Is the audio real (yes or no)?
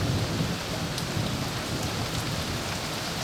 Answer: yes